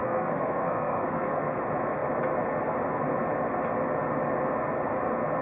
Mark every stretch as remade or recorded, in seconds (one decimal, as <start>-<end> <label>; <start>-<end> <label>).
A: 0.0-1.6 remade; 1.6-5.4 recorded